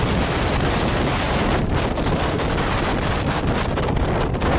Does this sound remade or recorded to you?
recorded